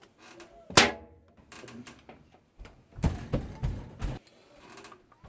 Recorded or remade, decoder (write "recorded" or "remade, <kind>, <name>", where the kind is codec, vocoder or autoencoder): recorded